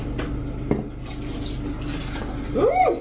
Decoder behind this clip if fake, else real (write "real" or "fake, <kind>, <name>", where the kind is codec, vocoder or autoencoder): real